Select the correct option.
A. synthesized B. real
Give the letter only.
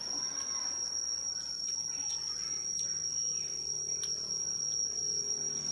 B